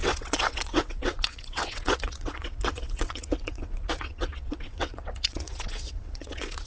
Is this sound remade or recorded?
remade